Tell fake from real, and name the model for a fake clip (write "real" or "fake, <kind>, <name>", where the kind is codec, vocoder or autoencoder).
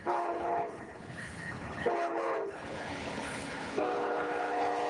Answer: fake, codec, HILCodec